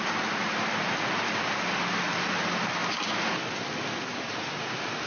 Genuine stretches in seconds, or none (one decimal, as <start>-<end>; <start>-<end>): 0.0-5.1